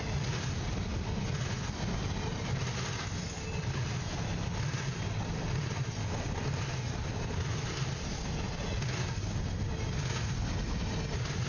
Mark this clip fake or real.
real